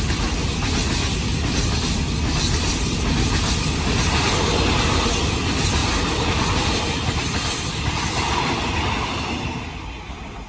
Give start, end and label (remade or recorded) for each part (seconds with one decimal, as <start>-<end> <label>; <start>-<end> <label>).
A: 0.0-10.5 recorded